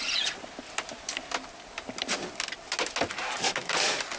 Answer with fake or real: real